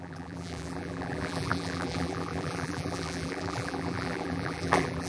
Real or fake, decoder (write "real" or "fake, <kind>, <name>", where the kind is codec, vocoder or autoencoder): fake, vocoder, BigVGAN v2